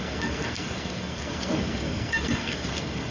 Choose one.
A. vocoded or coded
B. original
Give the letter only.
A